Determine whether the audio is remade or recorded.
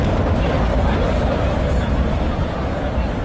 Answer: remade